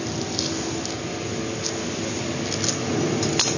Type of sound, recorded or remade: recorded